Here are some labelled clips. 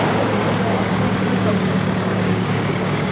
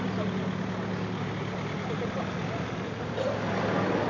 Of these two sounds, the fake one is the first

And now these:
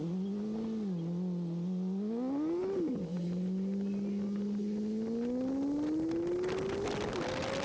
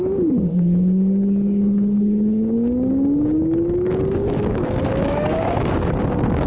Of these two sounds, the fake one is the second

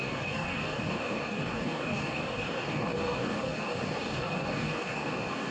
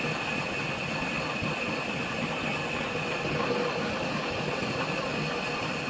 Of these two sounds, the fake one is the first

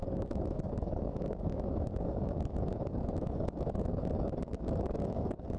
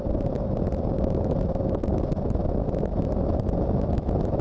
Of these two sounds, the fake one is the first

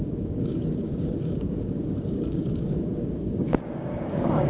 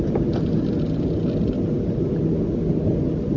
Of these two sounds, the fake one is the first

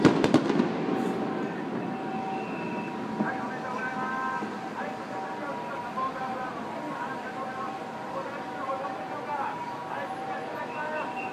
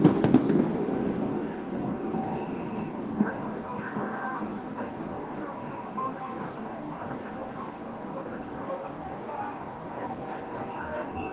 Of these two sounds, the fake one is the second